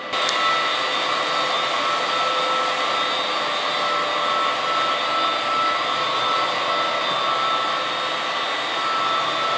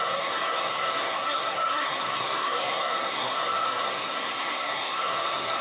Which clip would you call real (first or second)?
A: first